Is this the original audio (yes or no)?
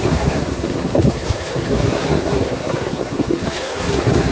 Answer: no